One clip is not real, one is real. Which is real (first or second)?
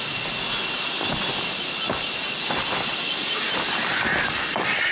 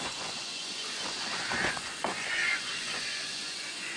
first